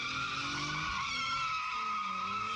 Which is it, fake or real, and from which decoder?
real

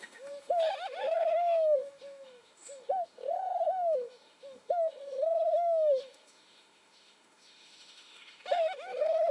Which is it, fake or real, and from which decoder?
fake, autoencoder, DAC-VAE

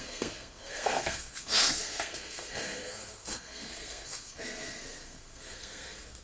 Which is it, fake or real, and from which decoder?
fake, codec, SNAC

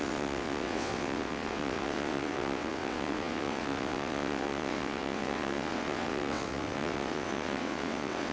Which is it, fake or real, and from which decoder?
fake, vocoder, WaveNeXt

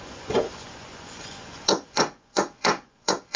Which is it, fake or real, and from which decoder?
fake, vocoder, Vocos